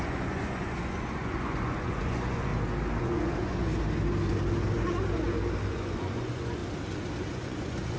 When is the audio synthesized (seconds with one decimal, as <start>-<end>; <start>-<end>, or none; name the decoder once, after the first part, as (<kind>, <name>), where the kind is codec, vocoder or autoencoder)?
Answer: 0.0-2.5 (vocoder, Vocos); 3.0-3.7; 5.7-6.6; 7.3-8.0